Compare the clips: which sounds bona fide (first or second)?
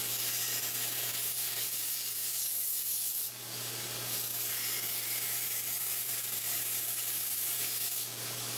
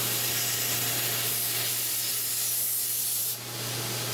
second